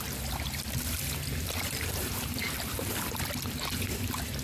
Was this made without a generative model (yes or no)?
no